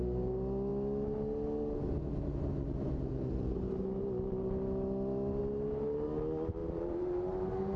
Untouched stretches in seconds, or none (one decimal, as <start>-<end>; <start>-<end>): 0.0-6.6